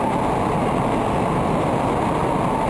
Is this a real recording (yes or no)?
yes